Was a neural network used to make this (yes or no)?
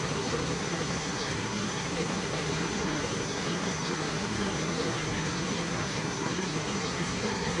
yes